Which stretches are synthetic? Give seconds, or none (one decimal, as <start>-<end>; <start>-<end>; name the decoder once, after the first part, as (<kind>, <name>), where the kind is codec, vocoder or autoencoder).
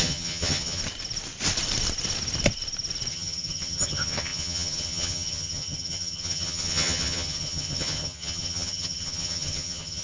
0.0-0.8 (vocoder, HiFi-GAN); 3.1-10.0